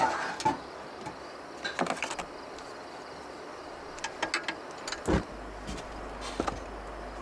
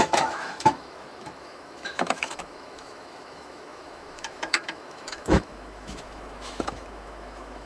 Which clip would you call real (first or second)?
first